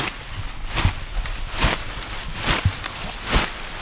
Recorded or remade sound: recorded